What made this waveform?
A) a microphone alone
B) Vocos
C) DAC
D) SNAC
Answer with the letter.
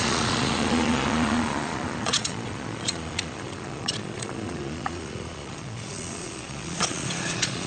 B